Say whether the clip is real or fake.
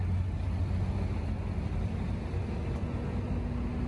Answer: real